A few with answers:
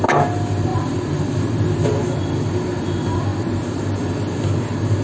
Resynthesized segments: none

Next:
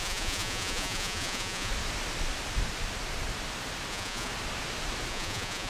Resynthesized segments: 0.0-1.7; 3.9-4.3; 5.1-5.7

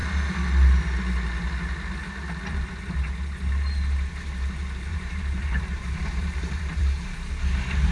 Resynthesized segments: 4.9-7.3

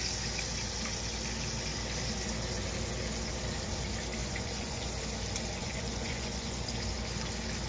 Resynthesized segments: 4.2-4.9; 5.6-6.7